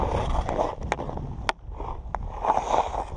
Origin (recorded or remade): recorded